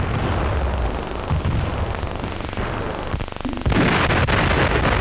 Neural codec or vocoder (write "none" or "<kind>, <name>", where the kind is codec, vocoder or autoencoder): none